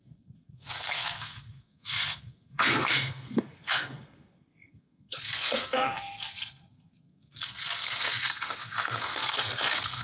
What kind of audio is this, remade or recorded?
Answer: remade